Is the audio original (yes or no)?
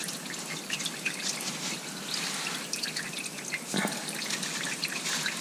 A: yes